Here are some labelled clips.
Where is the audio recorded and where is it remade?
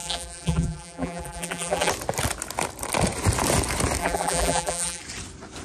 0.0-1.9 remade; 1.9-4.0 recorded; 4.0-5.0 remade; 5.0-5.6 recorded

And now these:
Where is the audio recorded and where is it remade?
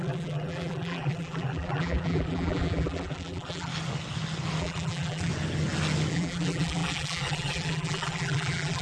0.0-3.7 remade; 3.7-4.6 recorded; 4.6-5.3 remade; 5.3-6.1 recorded; 6.1-8.8 remade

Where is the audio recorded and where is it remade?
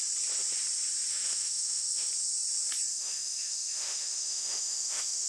0.0-1.1 recorded; 1.1-2.1 remade; 2.1-2.9 recorded; 2.9-5.3 remade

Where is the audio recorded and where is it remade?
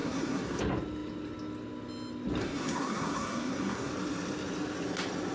0.0-0.6 remade; 0.6-2.4 recorded; 2.4-3.9 remade; 3.9-5.3 recorded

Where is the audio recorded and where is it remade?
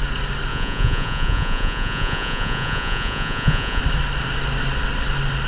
0.0-0.5 recorded; 0.5-3.8 remade; 3.8-5.5 recorded